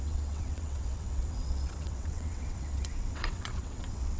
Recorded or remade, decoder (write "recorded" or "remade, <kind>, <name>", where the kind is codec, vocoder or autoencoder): remade, vocoder, WaveNeXt